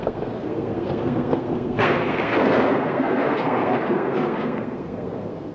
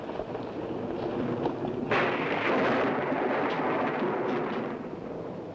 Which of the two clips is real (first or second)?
second